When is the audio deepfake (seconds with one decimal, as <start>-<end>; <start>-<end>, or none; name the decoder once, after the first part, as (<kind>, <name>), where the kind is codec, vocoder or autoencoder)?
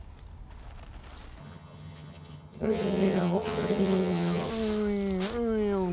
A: 1.4-4.5 (vocoder, HiFi-GAN)